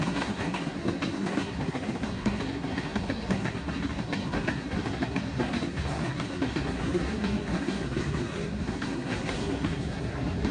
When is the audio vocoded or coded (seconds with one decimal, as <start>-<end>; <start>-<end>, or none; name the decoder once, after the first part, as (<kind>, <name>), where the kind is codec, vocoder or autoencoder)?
0.0-10.5 (codec, SNAC)